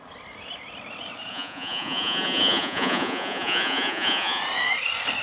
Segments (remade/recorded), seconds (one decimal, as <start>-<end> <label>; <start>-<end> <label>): 0.0-1.3 recorded; 1.3-4.4 remade; 4.4-5.2 recorded